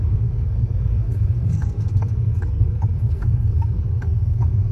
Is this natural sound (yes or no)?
no